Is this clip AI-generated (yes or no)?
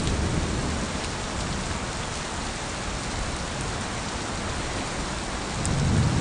no